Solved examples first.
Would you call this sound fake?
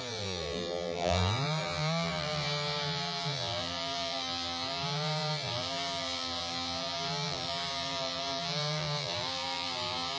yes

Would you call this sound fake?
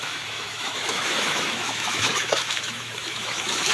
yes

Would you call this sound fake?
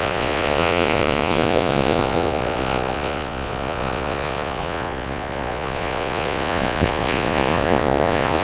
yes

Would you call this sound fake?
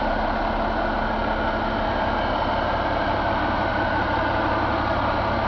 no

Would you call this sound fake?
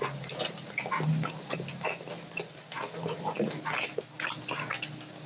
no